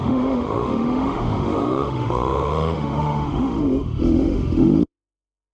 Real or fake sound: fake